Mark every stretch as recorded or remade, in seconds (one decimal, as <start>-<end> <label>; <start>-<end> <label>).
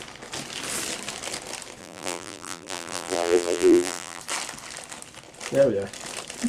0.0-1.8 recorded; 1.8-4.2 remade; 4.2-6.5 recorded